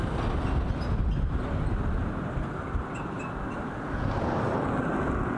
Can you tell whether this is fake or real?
real